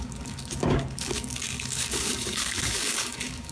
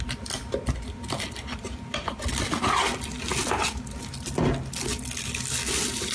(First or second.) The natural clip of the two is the second